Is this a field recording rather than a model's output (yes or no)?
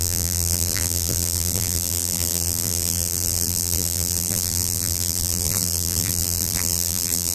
no